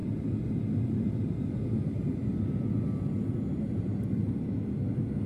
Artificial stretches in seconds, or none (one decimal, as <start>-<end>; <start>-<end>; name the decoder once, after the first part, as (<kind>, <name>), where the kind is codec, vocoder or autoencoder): none